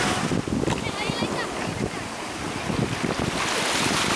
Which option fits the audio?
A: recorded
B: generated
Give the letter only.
A